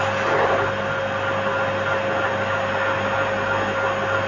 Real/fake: real